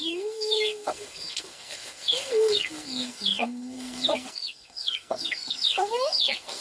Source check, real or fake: fake